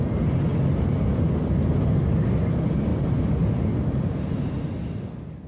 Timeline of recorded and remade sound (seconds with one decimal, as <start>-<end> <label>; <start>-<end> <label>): 0.0-5.5 recorded